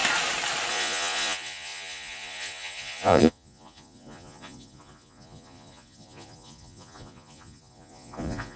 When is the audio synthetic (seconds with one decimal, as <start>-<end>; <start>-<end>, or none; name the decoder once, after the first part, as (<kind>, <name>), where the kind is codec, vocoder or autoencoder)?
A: 0.7-8.6 (vocoder, Vocos)